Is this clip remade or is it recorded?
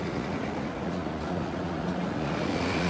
remade